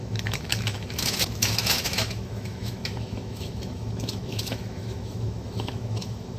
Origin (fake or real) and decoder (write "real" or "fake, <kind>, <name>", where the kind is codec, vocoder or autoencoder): fake, autoencoder, DAC-VAE